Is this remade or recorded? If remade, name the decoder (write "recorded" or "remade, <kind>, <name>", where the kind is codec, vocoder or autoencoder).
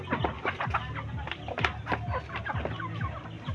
recorded